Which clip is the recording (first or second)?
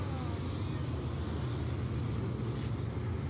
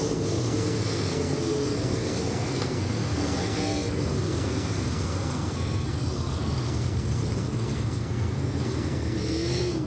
first